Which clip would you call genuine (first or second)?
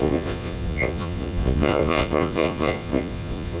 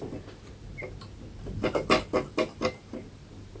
second